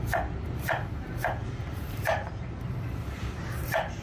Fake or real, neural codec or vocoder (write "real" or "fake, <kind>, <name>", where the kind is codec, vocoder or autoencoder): fake, vocoder, BigVGAN v2